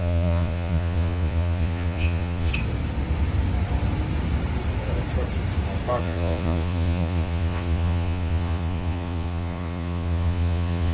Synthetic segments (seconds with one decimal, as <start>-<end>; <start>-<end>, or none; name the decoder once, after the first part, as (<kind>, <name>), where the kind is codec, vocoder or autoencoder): 0.0-2.5 (vocoder, Vocos); 6.0-10.9